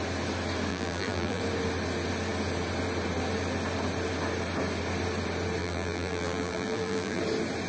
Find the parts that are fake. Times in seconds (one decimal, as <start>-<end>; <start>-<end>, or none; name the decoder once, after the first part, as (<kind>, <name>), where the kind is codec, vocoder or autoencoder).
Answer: 0.7-1.4 (vocoder, BigVGAN v2); 5.6-7.2